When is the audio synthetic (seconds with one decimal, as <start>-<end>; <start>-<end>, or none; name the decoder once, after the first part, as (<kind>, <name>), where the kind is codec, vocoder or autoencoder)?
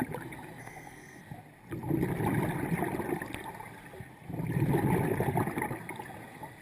0.6-1.2 (codec, SNAC)